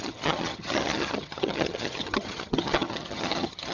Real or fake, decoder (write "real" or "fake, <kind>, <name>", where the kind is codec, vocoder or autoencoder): fake, vocoder, HiFi-GAN